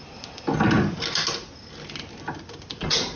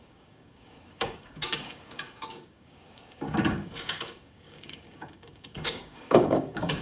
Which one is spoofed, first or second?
second